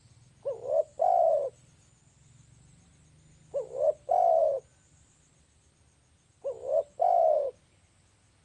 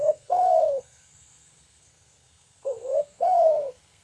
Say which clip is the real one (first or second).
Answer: first